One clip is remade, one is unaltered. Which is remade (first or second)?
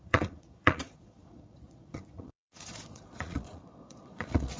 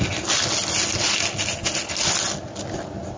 first